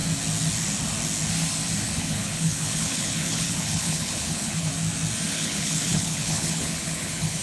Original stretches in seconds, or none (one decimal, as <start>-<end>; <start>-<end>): 0.0-2.0; 4.7-5.3